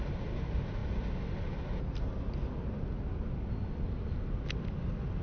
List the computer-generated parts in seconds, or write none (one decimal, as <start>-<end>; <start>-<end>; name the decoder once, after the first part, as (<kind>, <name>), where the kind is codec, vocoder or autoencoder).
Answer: none